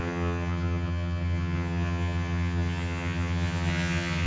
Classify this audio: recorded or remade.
remade